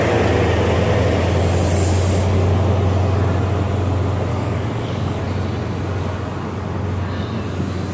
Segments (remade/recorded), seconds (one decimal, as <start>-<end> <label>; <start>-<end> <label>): 0.0-4.3 recorded; 4.3-5.2 remade; 5.2-7.9 recorded